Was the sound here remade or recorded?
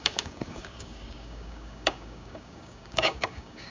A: remade